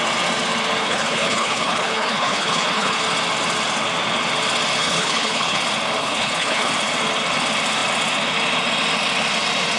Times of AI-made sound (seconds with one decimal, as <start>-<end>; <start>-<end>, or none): 0.8-3.0; 4.8-5.6; 6.0-6.7